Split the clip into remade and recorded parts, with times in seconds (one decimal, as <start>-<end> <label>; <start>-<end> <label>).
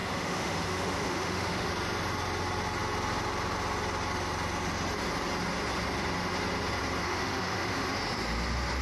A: 0.0-1.7 remade; 1.7-7.0 recorded; 7.0-8.0 remade; 8.0-8.8 recorded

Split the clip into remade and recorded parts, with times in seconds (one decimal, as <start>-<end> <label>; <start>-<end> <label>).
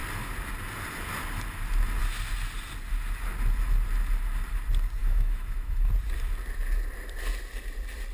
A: 0.0-5.0 recorded; 5.0-5.9 remade; 5.9-8.1 recorded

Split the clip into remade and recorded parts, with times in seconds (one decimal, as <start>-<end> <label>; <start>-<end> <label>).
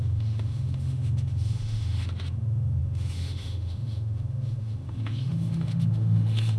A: 0.0-6.6 remade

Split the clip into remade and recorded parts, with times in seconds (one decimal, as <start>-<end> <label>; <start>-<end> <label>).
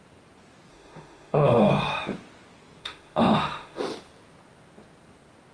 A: 0.0-0.7 recorded; 0.7-1.7 remade; 1.7-2.8 recorded; 2.8-3.8 remade; 3.8-5.5 recorded